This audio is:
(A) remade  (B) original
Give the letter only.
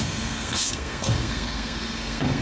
A